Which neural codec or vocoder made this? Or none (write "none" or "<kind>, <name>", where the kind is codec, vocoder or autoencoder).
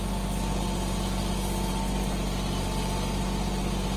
none